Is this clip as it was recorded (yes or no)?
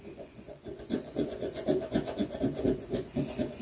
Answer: no